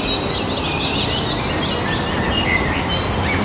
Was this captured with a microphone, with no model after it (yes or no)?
yes